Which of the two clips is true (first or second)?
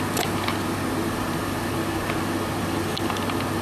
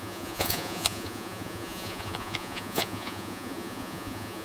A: first